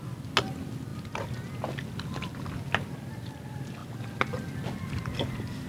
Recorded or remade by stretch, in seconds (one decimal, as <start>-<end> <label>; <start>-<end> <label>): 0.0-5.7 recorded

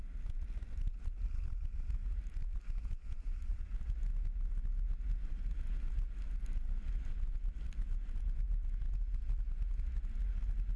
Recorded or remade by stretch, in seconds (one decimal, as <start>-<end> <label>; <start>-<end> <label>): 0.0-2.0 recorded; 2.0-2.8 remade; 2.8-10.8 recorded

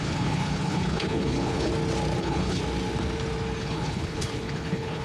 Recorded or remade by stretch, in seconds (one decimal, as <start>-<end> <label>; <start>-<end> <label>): 0.0-1.7 remade; 1.7-2.2 recorded; 2.2-2.6 remade; 2.6-3.6 recorded; 3.6-5.0 remade

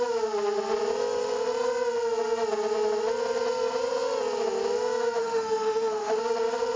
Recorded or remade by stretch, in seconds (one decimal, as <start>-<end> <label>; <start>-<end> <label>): 0.0-5.2 recorded; 5.2-6.2 remade; 6.2-6.8 recorded

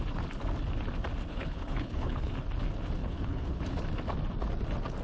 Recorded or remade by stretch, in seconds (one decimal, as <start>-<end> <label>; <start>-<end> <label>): 0.0-1.3 recorded; 1.3-2.3 remade; 2.3-3.0 recorded; 3.0-3.6 remade; 3.6-5.0 recorded